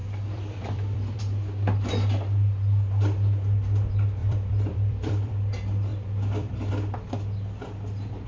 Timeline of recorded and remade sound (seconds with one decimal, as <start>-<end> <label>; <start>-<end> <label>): 0.0-1.2 remade; 1.2-4.2 recorded; 4.2-5.3 remade; 5.3-5.9 recorded; 5.9-6.7 remade; 6.7-8.3 recorded